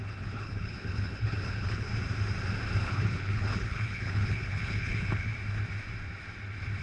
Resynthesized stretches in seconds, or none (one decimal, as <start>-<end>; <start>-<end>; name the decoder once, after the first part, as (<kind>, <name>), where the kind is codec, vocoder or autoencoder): 0.0-1.9 (codec, HILCodec); 2.8-5.3